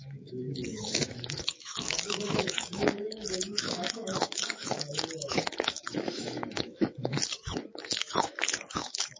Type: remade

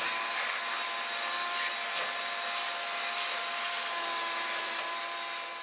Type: recorded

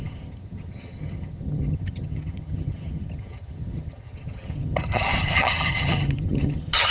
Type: remade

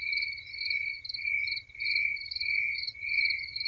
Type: recorded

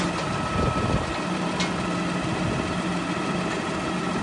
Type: recorded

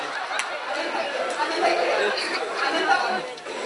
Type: recorded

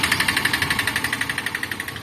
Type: recorded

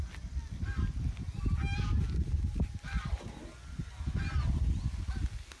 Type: recorded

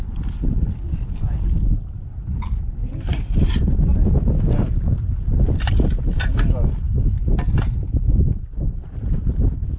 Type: recorded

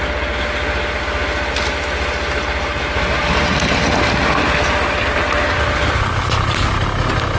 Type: recorded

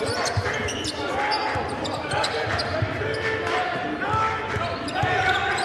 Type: recorded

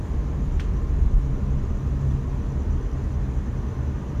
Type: recorded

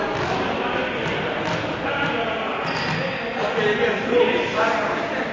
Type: recorded